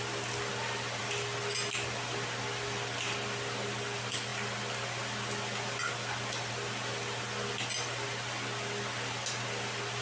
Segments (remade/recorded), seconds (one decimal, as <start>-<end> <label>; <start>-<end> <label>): 0.0-10.0 recorded